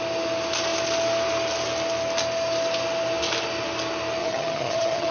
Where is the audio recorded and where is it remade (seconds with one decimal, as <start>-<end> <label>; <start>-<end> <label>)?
0.0-4.2 recorded; 4.2-5.1 remade